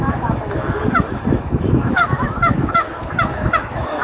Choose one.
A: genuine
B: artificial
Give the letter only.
B